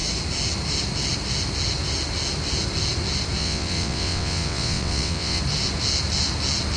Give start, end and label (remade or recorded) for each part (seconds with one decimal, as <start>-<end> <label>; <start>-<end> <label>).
0.0-3.4 recorded; 3.4-5.4 remade; 5.4-6.8 recorded